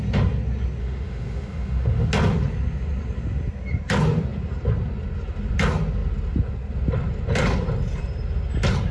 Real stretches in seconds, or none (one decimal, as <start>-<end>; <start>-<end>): 0.0-0.8; 2.1-8.9